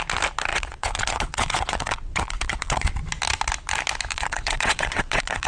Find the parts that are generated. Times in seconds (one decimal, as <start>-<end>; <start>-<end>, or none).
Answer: 0.5-2.9; 4.1-5.5

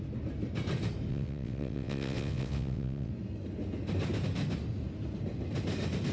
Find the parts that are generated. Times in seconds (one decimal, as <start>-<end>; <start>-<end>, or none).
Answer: 1.1-3.1

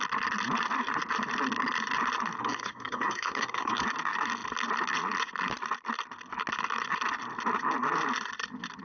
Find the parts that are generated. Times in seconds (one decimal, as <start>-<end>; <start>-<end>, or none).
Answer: 2.4-3.8

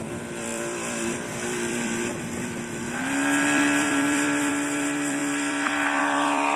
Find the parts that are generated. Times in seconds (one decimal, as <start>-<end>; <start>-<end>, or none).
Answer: 0.0-6.6